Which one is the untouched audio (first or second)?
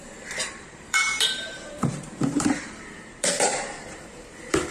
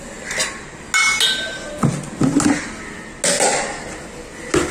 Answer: second